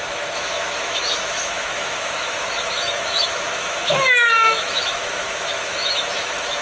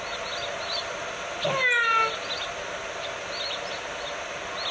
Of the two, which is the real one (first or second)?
second